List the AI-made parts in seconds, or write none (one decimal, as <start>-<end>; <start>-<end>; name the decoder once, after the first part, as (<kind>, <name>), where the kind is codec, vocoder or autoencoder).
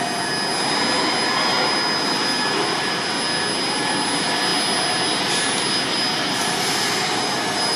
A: none